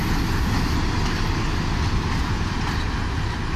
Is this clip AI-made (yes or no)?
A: no